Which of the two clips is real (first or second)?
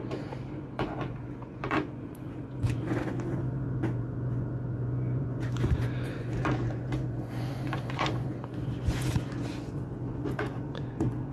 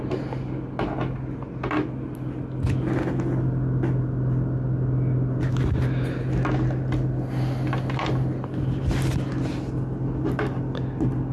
second